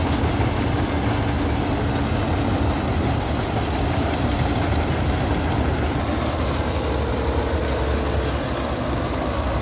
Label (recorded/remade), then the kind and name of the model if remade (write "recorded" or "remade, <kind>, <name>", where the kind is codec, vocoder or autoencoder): recorded